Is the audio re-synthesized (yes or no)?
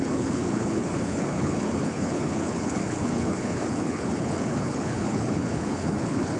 yes